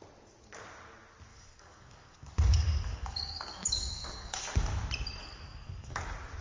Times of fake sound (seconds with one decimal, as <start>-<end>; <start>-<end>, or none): 1.3-4.4; 5.2-6.0